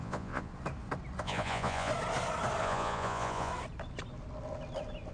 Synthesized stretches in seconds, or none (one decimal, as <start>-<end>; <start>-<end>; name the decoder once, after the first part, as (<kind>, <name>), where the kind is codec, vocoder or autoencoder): 0.0-0.5 (vocoder, Vocos); 1.2-1.9; 2.6-3.5